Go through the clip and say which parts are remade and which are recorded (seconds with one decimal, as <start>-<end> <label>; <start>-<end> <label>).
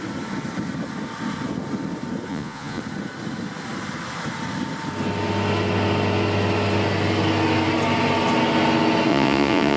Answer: 0.0-2.3 recorded; 2.3-2.8 remade; 2.8-9.1 recorded; 9.1-9.8 remade